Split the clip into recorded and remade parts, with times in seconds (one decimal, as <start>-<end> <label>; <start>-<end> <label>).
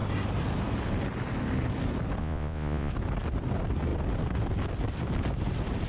0.0-2.2 recorded; 2.2-2.9 remade; 2.9-5.9 recorded